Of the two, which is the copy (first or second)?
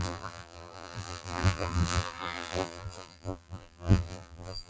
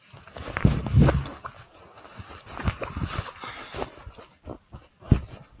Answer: first